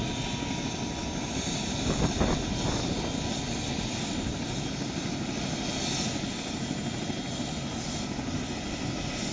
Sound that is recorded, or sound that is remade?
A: recorded